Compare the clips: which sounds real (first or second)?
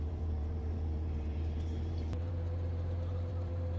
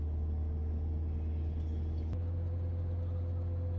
second